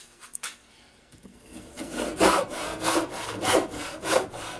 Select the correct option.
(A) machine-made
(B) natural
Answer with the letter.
A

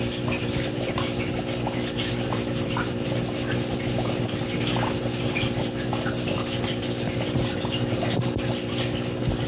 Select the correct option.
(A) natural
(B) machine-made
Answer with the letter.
A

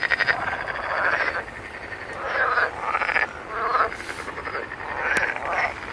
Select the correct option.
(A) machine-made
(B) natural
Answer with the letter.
B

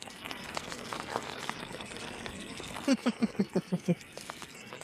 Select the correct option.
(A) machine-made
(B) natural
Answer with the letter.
A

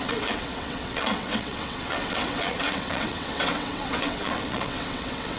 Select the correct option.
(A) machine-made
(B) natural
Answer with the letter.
A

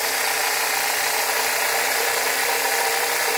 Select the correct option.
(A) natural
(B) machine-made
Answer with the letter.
B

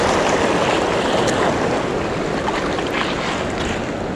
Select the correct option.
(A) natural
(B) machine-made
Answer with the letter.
A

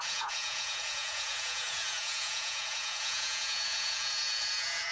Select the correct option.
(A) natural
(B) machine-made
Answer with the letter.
B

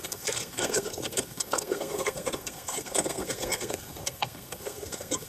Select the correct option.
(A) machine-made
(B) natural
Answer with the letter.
A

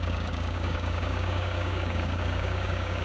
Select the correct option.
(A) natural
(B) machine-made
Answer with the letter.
B